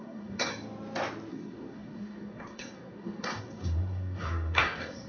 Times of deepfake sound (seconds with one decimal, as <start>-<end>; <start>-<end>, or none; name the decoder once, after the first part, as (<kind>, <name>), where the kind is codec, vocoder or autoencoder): 0.0-0.5 (codec, SNAC); 1.3-5.1

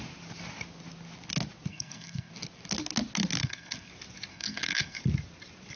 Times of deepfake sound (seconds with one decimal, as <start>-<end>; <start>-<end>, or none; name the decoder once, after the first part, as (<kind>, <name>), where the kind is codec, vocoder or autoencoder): 1.7-2.3 (codec, SNAC); 3.4-3.9; 4.3-5.0

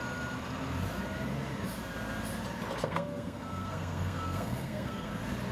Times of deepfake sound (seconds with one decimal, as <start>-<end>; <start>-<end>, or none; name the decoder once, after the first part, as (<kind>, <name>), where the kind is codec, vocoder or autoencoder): 2.8-5.1 (codec, SNAC)

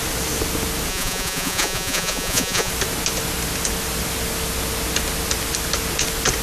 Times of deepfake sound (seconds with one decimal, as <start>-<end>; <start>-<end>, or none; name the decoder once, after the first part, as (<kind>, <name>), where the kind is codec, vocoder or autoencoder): 0.9-2.7 (vocoder, Vocos)